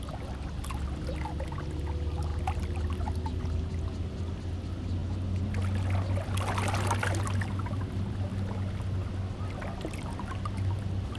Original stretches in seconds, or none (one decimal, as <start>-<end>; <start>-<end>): 0.0-11.2